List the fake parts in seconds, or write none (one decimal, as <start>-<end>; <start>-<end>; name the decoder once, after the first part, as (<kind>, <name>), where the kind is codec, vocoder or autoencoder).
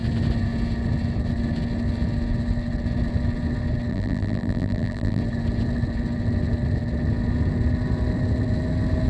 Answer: 3.9-5.2 (vocoder, BigVGAN v2)